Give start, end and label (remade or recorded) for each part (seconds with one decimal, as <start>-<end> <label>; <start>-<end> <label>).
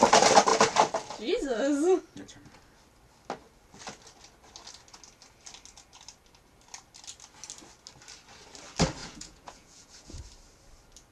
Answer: 0.0-9.0 recorded; 9.0-10.2 remade; 10.2-11.1 recorded